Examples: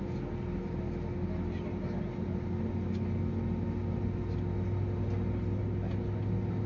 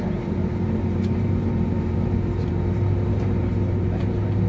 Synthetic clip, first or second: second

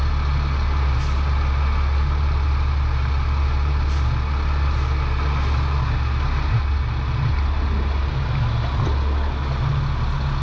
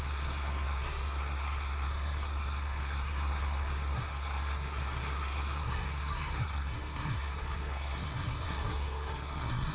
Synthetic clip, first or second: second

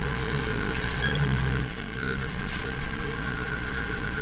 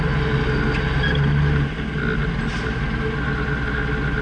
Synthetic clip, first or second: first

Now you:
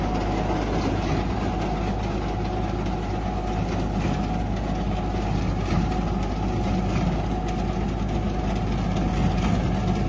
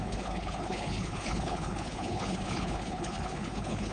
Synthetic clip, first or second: second